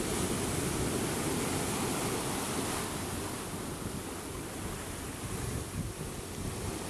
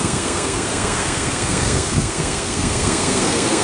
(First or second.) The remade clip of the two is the second